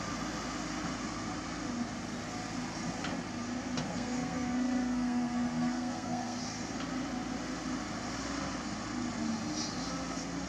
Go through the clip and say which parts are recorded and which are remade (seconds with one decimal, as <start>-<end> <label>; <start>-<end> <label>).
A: 0.0-3.9 recorded; 3.9-6.4 remade; 6.4-10.5 recorded